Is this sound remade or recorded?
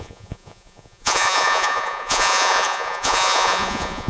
remade